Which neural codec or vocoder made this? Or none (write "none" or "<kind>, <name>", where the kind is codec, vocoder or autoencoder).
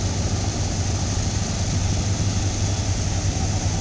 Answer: none